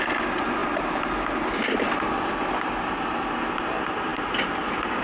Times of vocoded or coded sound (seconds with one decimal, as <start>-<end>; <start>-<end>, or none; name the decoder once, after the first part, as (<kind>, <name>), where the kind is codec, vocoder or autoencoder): none